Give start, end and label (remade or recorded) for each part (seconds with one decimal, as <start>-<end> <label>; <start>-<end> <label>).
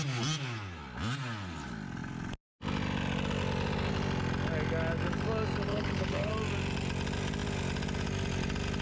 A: 0.0-5.7 recorded; 5.7-6.3 remade; 6.3-8.8 recorded